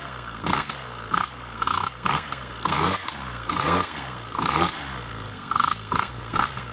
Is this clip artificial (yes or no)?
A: yes